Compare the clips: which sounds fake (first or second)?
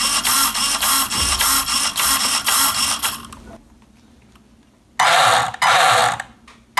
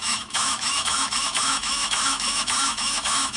second